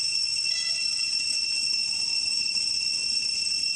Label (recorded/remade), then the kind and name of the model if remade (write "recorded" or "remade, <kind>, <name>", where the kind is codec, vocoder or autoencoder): recorded